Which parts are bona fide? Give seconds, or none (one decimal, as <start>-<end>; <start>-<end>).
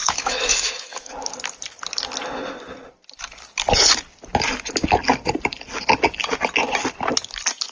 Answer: 1.1-7.7